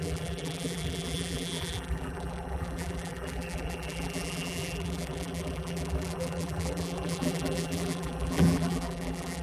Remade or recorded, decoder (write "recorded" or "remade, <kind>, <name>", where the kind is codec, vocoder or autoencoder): remade, vocoder, BigVGAN v2